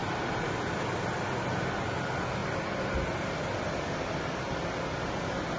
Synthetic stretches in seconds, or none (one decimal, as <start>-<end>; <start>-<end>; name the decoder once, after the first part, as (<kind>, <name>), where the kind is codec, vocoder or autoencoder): none